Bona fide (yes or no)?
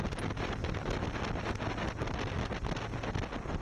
yes